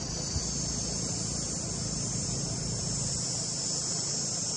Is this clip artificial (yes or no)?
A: no